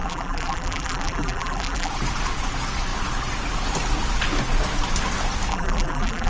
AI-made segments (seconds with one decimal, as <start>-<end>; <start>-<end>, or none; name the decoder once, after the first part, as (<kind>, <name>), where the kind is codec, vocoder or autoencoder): 0.0-1.9 (vocoder, BigVGAN v2); 5.5-6.3